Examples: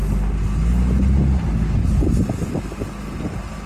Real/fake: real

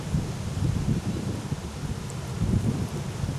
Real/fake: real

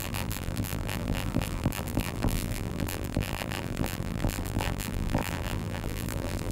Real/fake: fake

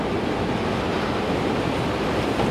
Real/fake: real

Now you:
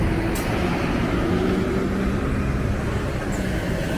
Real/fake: real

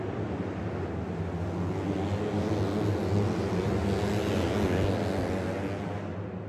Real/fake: real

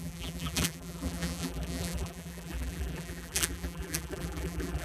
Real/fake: fake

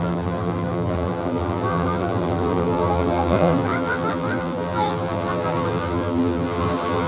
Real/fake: fake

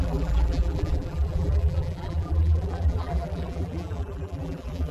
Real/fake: fake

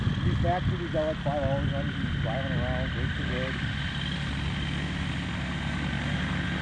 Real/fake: real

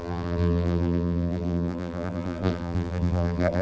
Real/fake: fake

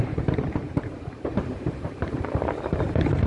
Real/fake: fake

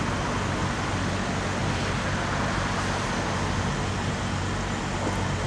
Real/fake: real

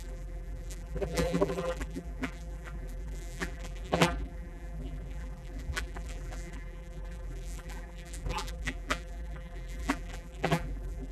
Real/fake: fake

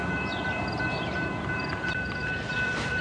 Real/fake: fake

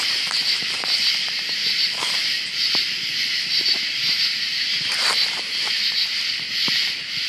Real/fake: fake